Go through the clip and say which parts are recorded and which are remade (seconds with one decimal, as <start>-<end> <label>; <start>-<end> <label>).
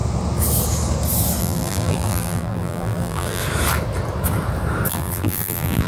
0.0-1.4 recorded; 1.4-3.4 remade; 3.4-4.9 recorded; 4.9-5.9 remade